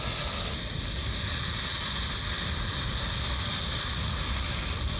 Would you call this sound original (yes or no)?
yes